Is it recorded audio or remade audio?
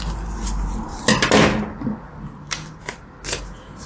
recorded